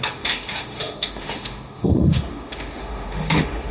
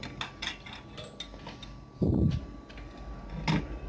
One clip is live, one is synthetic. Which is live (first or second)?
second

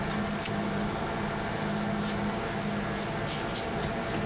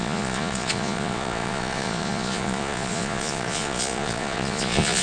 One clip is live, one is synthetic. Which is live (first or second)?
first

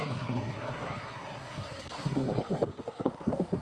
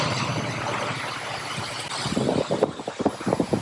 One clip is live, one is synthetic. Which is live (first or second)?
second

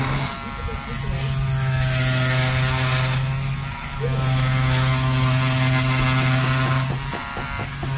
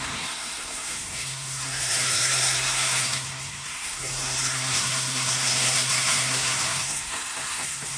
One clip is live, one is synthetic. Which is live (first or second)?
first